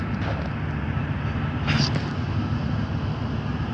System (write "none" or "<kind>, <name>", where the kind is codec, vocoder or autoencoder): none